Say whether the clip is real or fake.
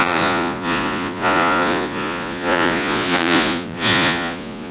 fake